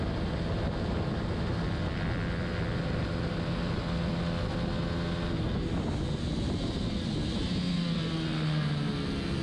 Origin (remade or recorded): recorded